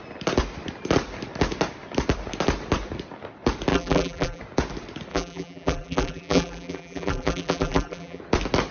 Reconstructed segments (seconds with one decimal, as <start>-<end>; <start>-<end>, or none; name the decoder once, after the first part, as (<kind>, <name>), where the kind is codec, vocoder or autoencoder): 3.7-4.4 (vocoder, BigVGAN v2); 5.1-8.2